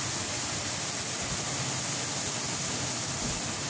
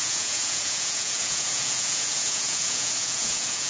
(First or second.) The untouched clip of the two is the first